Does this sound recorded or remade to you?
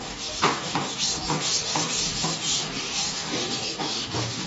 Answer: remade